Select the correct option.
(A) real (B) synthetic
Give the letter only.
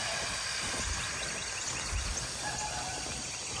A